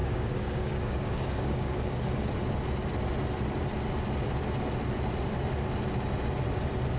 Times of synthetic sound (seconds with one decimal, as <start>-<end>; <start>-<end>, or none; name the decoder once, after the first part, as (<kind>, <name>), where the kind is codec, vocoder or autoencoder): 0.0-2.0 (codec, DAC)